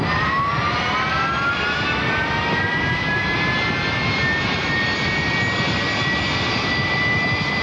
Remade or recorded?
recorded